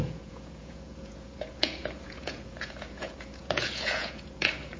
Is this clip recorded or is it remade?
remade